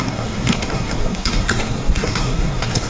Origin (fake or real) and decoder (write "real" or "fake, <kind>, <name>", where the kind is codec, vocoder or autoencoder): fake, codec, SNAC